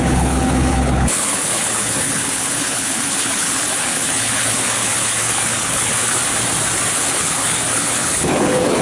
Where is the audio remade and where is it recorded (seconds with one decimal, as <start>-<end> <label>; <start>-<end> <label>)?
0.0-6.2 remade; 6.2-6.9 recorded; 6.9-8.8 remade